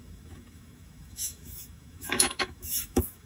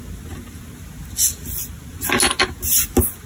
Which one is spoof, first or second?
first